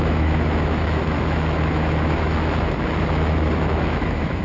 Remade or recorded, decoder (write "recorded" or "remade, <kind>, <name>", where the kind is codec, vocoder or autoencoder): remade, autoencoder, DAC-VAE